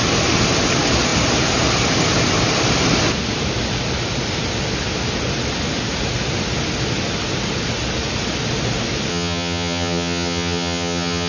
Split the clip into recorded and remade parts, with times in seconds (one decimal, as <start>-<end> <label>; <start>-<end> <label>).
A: 0.0-9.1 recorded; 9.1-11.3 remade